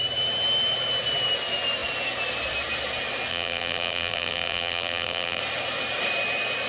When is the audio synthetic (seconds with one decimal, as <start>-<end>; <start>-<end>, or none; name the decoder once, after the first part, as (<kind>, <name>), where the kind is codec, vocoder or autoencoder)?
3.3-5.4 (vocoder, BigVGAN v2)